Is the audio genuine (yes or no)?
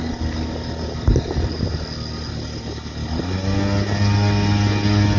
yes